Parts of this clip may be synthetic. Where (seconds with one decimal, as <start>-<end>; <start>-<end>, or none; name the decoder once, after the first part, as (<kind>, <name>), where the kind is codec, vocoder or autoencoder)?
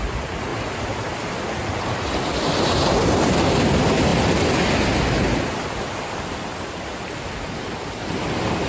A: none